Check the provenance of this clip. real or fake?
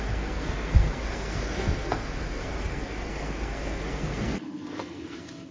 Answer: fake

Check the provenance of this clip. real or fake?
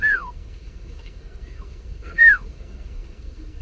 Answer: fake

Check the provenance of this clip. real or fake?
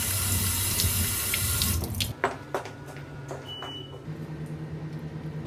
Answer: real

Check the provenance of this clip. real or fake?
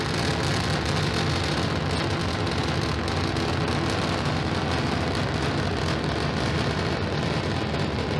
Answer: real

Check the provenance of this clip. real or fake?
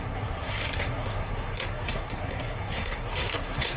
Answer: fake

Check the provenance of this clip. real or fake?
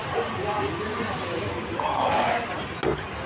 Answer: real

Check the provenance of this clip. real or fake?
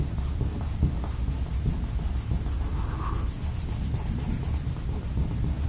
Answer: real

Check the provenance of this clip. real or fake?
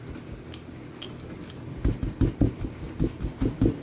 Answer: real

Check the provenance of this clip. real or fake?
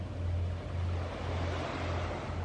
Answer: real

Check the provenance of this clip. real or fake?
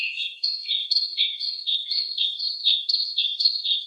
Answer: fake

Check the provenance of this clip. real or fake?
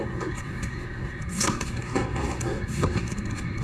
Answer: fake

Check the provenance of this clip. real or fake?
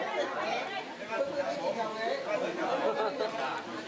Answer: real